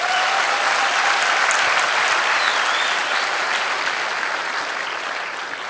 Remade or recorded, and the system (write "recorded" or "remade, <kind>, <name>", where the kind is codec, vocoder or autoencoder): recorded